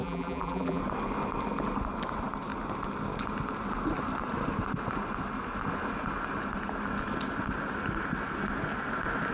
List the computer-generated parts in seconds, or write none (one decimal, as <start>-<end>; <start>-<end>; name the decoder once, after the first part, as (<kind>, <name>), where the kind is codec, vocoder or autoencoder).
0.0-0.8 (vocoder, BigVGAN v2)